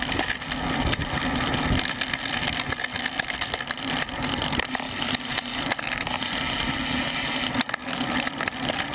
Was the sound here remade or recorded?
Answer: recorded